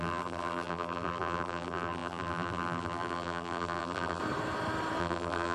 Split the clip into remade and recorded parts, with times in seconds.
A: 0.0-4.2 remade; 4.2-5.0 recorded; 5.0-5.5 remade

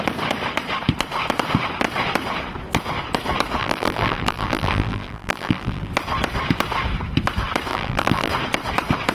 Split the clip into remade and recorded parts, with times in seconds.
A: 0.0-3.6 recorded; 3.6-5.9 remade; 5.9-7.7 recorded; 7.7-8.3 remade; 8.3-9.1 recorded

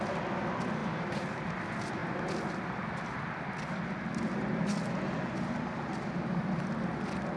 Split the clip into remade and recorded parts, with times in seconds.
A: 0.0-0.8 recorded; 0.8-1.6 remade; 1.6-7.4 recorded

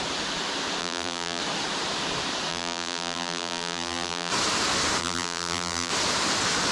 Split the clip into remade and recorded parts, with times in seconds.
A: 0.0-0.8 recorded; 0.8-1.4 remade; 1.4-2.5 recorded; 2.5-4.3 remade; 4.3-5.0 recorded; 5.0-5.9 remade; 5.9-6.7 recorded